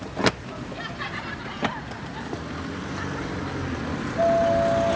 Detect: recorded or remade recorded